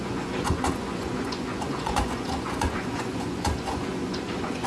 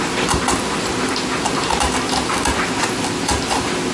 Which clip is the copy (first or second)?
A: first